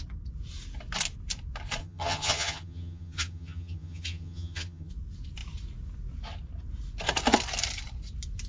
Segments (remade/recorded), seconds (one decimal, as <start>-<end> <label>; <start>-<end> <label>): 0.0-1.8 recorded; 1.8-4.9 remade; 4.9-8.5 recorded